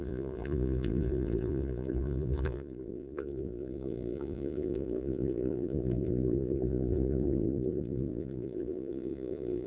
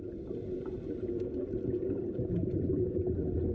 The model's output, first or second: first